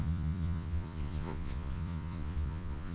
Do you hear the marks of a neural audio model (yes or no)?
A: yes